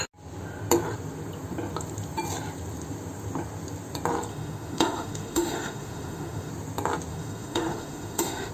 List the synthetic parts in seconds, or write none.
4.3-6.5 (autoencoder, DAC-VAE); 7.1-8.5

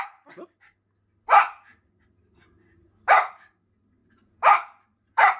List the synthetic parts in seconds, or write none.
4.0-5.4 (vocoder, BigVGAN v2)